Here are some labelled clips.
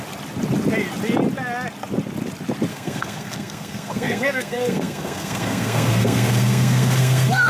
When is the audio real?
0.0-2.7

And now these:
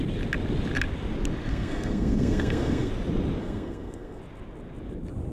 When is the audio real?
0.0-1.5; 2.9-3.4; 4.2-5.3